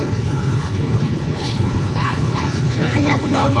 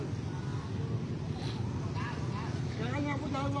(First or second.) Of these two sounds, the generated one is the first